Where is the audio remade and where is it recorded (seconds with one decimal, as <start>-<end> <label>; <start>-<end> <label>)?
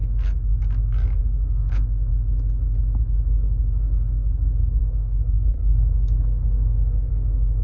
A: 0.0-2.1 remade; 2.1-3.0 recorded; 3.0-7.6 remade